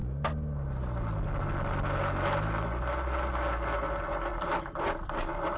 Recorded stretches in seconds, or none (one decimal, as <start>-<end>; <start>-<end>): 0.0-5.6